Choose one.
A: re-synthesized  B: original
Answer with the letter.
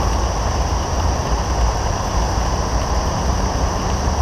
B